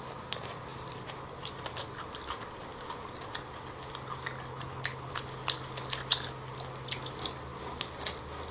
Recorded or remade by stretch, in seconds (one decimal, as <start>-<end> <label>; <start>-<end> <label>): 0.0-4.5 recorded; 4.5-5.1 remade; 5.1-8.5 recorded